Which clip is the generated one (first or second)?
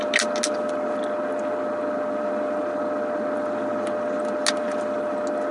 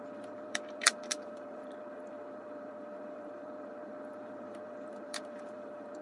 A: second